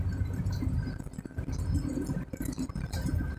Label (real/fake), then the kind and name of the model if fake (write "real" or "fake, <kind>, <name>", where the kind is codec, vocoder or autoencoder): real